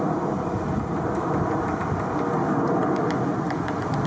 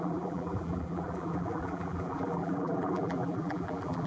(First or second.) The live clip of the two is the first